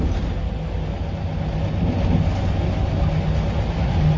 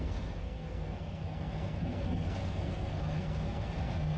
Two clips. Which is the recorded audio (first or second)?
first